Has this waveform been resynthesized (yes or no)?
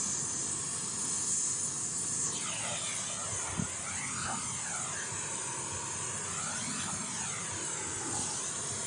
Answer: no